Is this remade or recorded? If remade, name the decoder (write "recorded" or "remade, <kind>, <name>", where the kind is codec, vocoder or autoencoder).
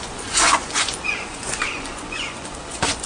remade, vocoder, Vocos